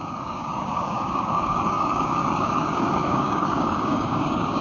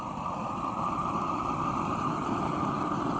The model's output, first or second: first